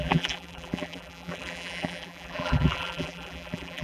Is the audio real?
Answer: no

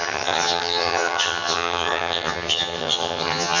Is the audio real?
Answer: no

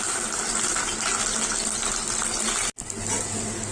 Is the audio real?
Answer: yes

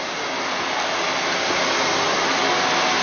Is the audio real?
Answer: yes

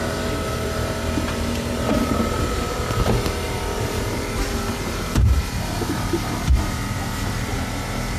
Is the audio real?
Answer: no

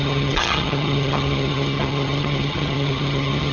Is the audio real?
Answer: no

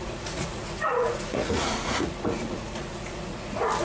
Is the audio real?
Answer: no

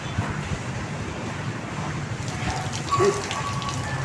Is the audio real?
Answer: yes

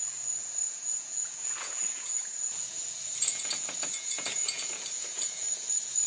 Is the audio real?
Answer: no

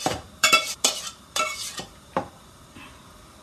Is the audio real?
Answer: no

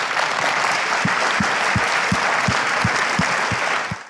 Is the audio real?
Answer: yes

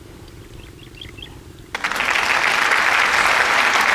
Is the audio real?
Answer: yes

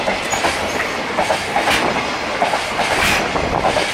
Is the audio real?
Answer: yes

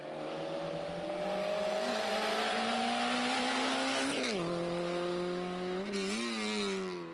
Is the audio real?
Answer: yes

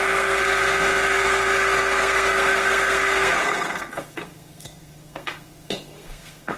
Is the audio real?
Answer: no